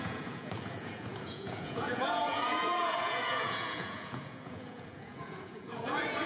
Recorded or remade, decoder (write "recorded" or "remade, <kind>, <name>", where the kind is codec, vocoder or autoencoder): remade, vocoder, Vocos